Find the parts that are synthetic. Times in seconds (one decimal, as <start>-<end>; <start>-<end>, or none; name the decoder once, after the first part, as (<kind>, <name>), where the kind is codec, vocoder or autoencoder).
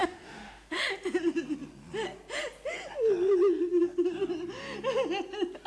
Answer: 0.0-0.8 (autoencoder, DAC-VAE)